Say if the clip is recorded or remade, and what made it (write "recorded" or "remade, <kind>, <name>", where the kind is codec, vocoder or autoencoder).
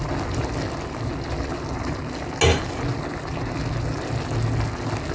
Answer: recorded